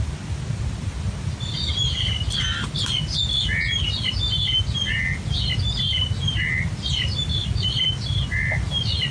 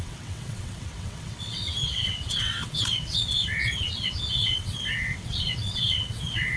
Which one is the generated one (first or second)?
second